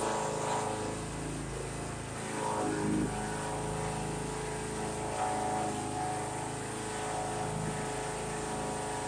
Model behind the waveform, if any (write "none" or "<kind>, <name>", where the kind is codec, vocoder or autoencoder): none